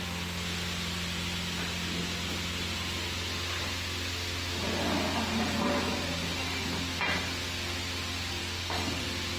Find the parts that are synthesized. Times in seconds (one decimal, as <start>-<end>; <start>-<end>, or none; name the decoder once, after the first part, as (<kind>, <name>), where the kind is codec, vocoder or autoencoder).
8.4-9.0 (codec, SNAC)